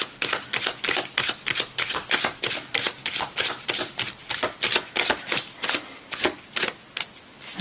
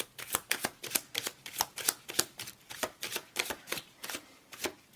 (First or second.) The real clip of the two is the first